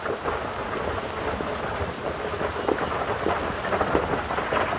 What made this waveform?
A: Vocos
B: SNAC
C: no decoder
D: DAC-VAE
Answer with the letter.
C